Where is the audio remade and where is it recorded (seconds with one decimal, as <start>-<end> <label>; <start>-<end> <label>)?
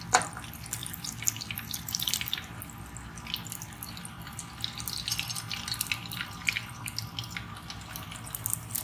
0.0-0.8 recorded; 0.8-2.6 remade; 2.6-8.8 recorded